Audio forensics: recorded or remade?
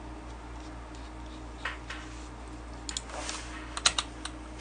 recorded